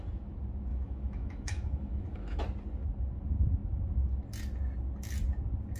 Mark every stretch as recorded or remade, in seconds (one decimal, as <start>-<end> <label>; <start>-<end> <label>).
0.0-0.7 recorded; 0.7-2.4 remade; 2.4-5.8 recorded